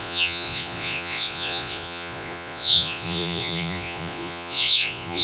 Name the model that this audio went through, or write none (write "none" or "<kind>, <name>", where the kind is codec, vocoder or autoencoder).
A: vocoder, Vocos